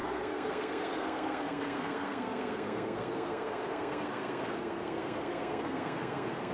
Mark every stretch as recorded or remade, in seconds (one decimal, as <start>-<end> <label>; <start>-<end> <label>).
0.0-6.5 remade